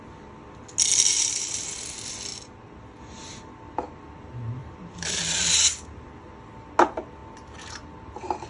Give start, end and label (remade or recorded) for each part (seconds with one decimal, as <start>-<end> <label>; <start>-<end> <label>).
0.0-4.6 recorded; 4.6-5.2 remade; 5.2-8.5 recorded